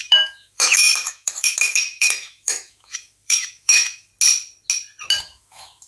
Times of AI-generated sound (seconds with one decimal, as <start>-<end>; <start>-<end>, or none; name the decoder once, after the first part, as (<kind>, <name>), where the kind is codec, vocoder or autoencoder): 0.0-4.1 (autoencoder, DAC-VAE); 5.2-5.9